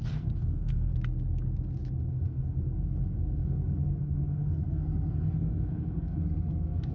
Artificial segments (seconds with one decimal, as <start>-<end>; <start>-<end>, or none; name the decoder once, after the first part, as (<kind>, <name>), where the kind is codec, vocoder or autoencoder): 0.0-0.9 (codec, SNAC); 2.0-6.9